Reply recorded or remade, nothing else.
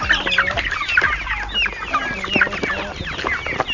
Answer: recorded